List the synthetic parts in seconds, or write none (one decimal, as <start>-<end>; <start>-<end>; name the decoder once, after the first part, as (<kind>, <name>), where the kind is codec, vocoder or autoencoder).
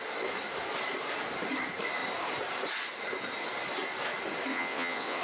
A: 4.5-5.2 (vocoder, WaveNeXt)